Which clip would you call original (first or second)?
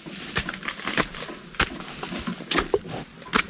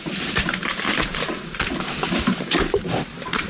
first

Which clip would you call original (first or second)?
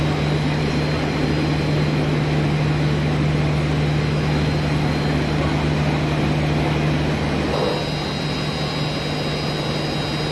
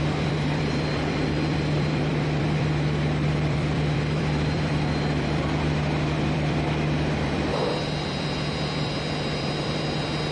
first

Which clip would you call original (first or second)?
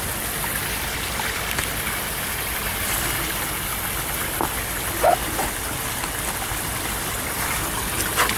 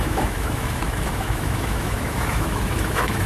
first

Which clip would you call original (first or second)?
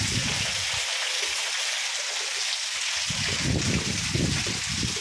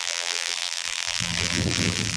first